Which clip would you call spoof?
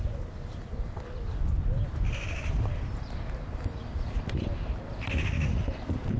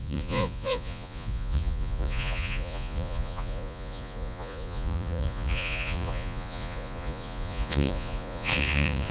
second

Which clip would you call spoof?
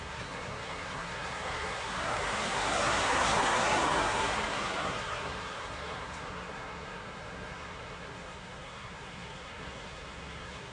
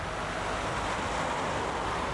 first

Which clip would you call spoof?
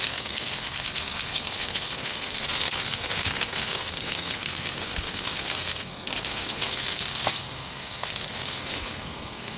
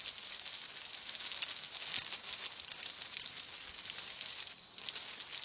first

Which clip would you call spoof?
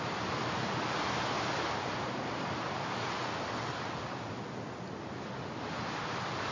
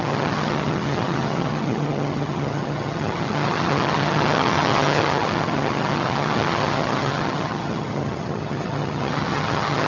second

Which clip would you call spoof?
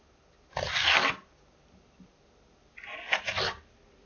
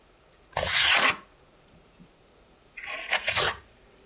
second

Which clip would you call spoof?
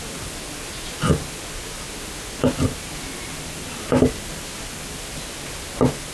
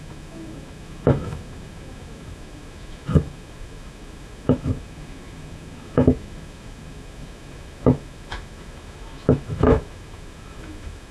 second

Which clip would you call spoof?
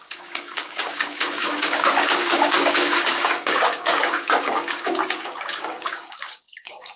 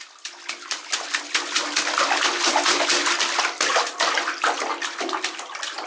first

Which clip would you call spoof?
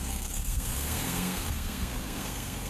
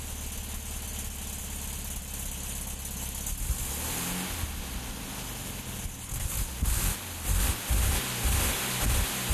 first